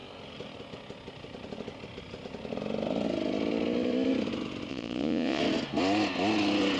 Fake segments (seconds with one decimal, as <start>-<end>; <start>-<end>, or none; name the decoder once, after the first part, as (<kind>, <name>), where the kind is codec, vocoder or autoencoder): 4.7-5.4 (vocoder, Vocos)